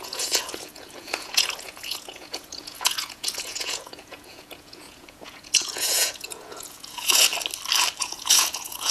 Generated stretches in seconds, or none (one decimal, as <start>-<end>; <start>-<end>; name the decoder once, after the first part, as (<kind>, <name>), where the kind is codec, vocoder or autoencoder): 0.0-7.3 (vocoder, Vocos); 8.0-8.9